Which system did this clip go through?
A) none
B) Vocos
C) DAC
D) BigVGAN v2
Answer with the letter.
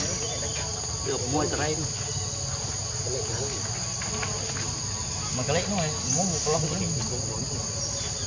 A